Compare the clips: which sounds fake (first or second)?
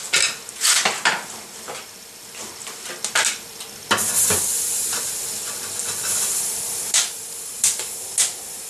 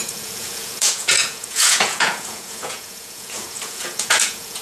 second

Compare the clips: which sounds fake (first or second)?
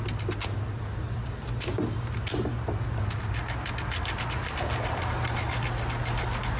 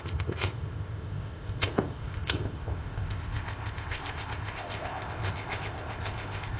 second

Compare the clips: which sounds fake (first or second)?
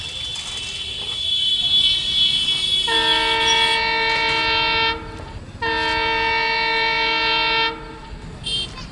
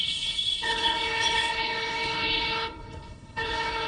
second